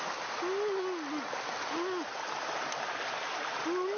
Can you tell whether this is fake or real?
real